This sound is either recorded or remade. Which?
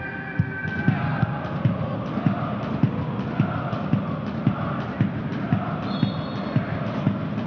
recorded